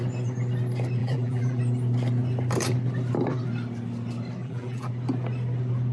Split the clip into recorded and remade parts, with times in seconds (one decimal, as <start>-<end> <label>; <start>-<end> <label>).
0.0-1.0 recorded; 1.0-1.6 remade; 1.6-4.4 recorded; 4.4-4.9 remade; 4.9-5.9 recorded